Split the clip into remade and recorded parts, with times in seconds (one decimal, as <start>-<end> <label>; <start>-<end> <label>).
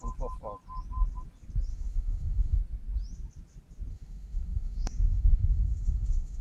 0.0-1.7 recorded; 1.7-2.6 remade; 2.6-3.9 recorded; 3.9-6.4 remade